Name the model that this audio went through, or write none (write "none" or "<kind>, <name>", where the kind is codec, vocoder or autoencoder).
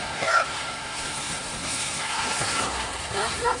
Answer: codec, SNAC